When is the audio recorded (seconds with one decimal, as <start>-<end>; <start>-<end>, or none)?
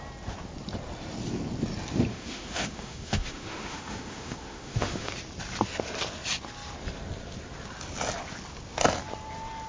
0.0-2.1; 5.1-9.7